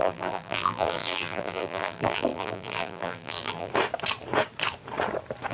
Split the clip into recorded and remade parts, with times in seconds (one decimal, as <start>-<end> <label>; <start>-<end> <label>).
0.0-3.7 remade; 3.7-5.5 recorded